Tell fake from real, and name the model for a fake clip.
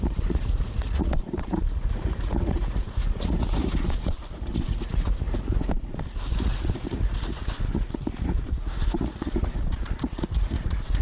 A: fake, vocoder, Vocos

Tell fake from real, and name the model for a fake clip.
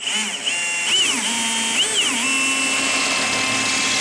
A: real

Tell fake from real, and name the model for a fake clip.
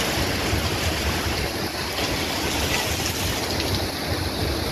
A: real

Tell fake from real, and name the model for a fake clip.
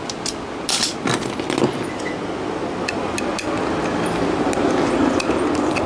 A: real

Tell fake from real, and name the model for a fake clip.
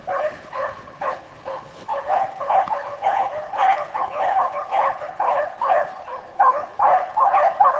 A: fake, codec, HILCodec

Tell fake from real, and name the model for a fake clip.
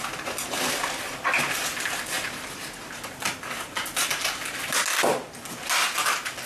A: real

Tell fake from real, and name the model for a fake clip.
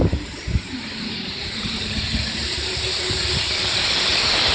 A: fake, vocoder, BigVGAN v2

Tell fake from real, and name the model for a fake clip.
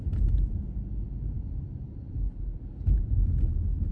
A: fake, vocoder, BigVGAN v2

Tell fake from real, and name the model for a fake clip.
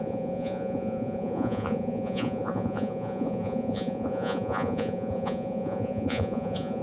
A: fake, vocoder, Vocos